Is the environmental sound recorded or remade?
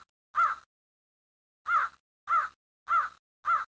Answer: recorded